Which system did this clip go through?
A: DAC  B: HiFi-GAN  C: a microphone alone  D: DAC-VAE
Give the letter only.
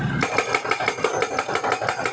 C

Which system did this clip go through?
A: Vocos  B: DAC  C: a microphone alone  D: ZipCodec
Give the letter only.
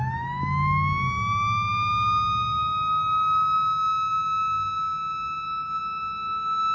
C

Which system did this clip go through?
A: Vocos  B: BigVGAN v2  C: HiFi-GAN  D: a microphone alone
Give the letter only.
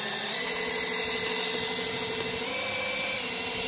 D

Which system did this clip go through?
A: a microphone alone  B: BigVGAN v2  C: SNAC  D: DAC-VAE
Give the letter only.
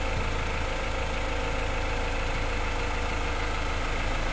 A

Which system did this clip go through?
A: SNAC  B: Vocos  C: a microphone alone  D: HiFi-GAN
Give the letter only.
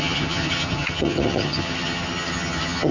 D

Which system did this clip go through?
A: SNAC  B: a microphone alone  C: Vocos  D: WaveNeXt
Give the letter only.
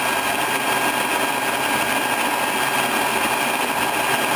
B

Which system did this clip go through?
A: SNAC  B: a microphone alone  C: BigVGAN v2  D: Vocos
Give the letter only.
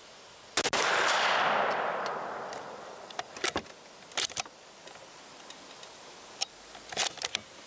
B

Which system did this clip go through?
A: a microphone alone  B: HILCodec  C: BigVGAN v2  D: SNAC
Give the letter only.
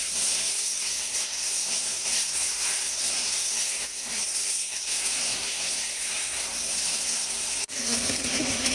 D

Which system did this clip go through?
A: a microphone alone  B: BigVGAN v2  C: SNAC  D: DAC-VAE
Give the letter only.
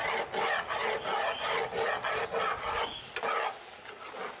A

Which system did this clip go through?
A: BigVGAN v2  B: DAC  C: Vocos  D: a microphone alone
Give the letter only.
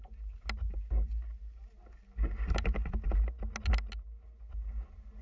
D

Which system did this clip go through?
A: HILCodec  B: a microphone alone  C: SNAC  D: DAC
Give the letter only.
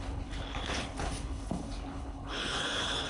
A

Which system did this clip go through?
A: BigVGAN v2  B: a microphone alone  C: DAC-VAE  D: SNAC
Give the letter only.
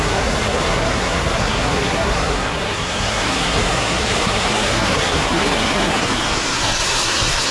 D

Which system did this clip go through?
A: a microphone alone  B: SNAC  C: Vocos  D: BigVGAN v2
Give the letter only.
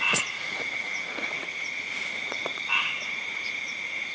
C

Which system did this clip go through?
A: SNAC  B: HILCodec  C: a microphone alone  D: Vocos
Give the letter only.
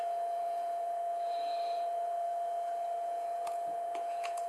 D